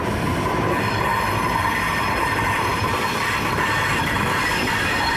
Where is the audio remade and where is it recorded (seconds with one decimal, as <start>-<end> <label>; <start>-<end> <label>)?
0.0-1.1 remade; 1.1-1.7 recorded; 1.7-5.2 remade